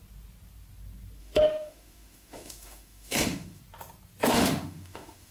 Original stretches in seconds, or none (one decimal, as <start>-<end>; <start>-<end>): 0.0-1.2; 3.6-4.3